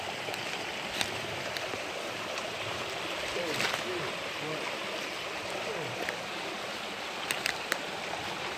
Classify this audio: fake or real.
fake